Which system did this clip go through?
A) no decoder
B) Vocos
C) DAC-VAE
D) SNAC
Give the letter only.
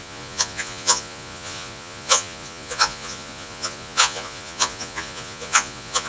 B